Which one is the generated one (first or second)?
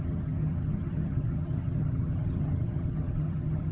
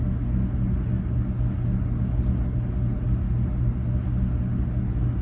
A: first